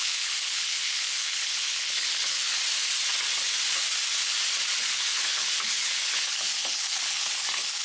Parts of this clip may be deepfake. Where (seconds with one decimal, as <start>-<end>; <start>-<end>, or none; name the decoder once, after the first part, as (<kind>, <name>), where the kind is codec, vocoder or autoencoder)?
0.0-2.6 (codec, HILCodec); 4.8-7.8